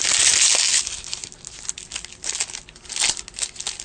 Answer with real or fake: real